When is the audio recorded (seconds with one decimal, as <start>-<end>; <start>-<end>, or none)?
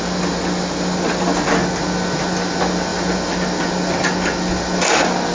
0.0-5.3